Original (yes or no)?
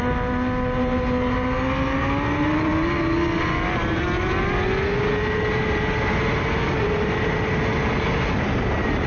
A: yes